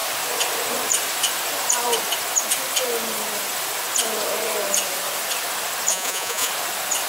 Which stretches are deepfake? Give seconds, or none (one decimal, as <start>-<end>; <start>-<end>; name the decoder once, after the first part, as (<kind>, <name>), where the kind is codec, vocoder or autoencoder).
5.9-6.5 (vocoder, Vocos)